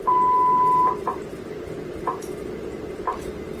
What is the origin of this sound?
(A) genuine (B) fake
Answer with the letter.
A